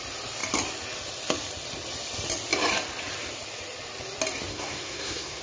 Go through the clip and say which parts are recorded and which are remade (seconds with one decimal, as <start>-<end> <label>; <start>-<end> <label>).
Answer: 0.0-4.5 recorded; 4.5-5.4 remade

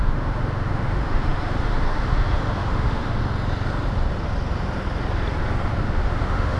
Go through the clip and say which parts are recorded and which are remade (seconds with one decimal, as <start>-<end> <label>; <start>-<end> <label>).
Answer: 0.0-3.2 remade; 3.2-5.8 recorded; 5.8-6.6 remade

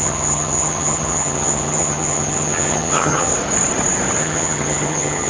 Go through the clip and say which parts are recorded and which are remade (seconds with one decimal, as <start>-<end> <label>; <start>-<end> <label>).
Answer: 0.0-3.3 remade; 3.3-4.2 recorded; 4.2-5.3 remade

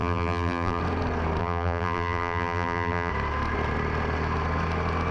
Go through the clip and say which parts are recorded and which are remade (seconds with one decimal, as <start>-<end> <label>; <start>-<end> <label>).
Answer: 0.0-0.8 remade; 0.8-1.4 recorded; 1.4-3.1 remade; 3.1-5.1 recorded